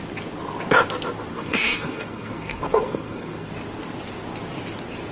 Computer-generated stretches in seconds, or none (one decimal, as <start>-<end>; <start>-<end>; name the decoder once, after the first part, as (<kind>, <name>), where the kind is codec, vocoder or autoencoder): 1.3-3.5 (codec, SNAC)